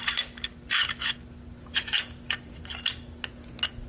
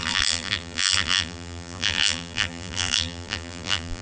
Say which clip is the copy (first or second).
second